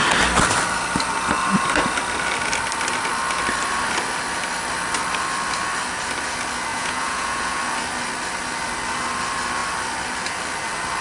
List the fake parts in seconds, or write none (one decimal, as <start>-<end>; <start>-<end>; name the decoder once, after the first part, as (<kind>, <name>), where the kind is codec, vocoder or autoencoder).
6.7-7.6 (vocoder, Vocos)